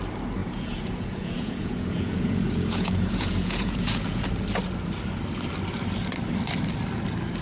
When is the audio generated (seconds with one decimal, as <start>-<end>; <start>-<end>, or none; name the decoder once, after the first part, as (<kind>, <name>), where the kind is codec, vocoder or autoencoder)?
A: 0.4-4.2 (vocoder, Vocos)